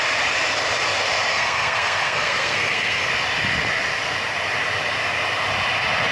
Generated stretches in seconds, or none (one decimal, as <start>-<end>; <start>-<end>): 1.3-3.1